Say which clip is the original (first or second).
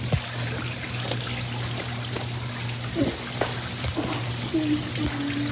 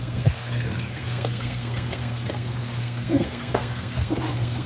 first